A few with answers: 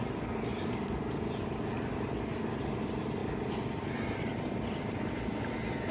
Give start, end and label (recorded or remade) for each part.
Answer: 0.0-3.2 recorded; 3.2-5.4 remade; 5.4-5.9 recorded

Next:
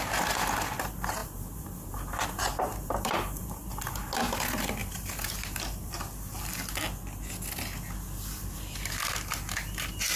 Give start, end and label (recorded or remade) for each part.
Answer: 0.0-1.2 recorded; 1.2-3.7 remade; 3.7-4.8 recorded; 4.8-5.9 remade; 5.9-10.2 recorded

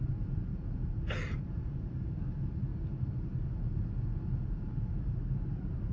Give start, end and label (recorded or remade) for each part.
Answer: 0.0-0.5 remade; 0.5-1.5 recorded; 1.5-2.7 remade; 2.7-4.4 recorded; 4.4-5.9 remade

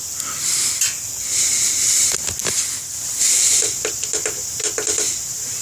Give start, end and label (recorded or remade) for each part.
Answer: 0.0-5.6 recorded